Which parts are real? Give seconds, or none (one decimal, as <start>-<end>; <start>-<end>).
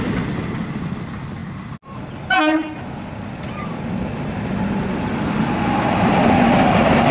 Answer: 0.0-7.1